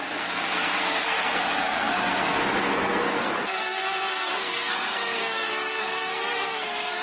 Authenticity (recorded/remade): remade